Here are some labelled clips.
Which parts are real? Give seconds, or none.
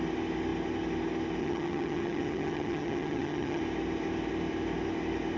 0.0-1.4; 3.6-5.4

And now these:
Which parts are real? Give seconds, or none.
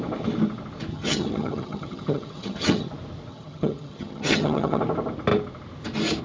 0.0-0.9; 2.9-3.3; 4.8-6.2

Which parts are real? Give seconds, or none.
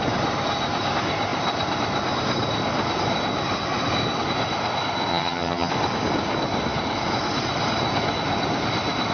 0.0-5.1; 5.7-9.1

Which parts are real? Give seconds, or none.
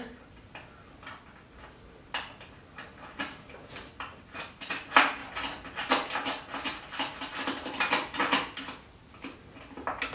0.0-10.1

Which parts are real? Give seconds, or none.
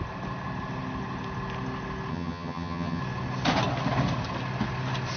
0.0-2.1; 3.0-5.2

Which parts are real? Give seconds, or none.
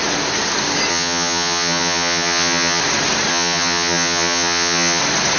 0.0-0.9; 2.8-3.3; 5.0-5.4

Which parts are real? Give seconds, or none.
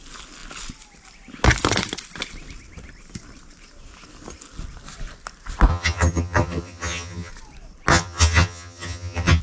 0.0-5.7; 7.3-7.9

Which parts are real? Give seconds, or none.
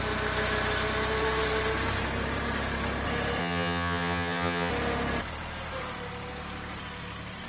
0.0-3.4; 4.7-7.5